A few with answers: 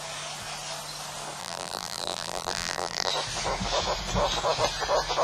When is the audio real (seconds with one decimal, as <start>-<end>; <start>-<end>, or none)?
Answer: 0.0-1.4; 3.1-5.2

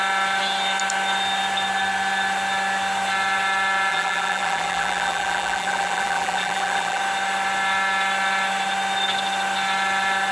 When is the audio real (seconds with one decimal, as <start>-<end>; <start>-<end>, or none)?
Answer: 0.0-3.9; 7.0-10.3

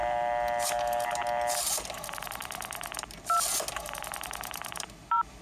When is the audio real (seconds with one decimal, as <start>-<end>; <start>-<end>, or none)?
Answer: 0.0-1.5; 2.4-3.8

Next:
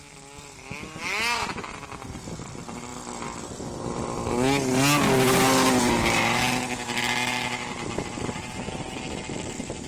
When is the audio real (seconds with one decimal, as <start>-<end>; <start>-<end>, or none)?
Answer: 0.0-9.9

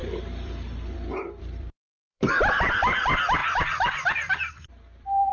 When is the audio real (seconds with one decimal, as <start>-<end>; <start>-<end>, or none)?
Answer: none

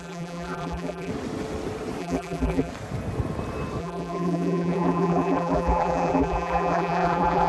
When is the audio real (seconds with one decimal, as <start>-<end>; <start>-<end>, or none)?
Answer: 1.1-2.0; 2.7-3.8